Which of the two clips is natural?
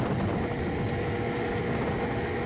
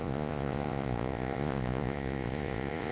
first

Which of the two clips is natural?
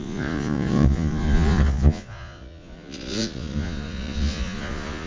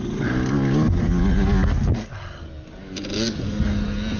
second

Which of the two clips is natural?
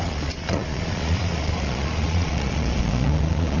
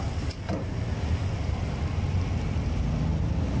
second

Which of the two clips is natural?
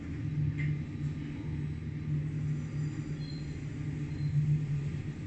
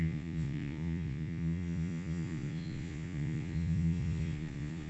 first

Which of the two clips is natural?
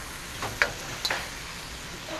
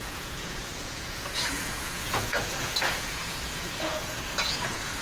first